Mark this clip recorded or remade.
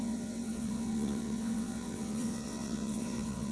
remade